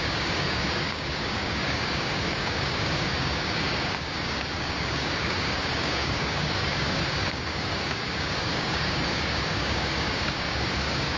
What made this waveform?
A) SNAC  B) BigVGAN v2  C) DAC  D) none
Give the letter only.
C